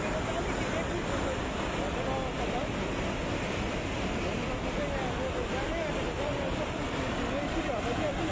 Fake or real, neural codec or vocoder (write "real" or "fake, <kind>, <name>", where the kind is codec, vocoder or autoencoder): real